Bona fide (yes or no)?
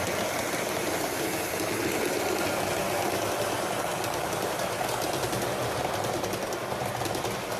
yes